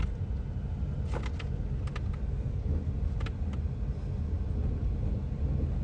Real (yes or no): yes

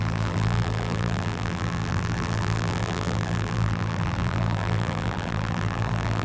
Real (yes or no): no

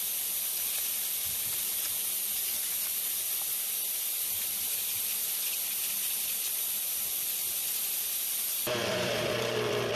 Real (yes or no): no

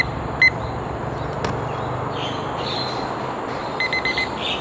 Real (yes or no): yes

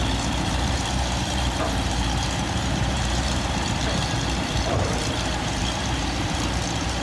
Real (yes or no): no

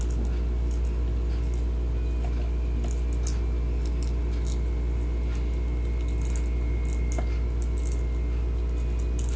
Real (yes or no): yes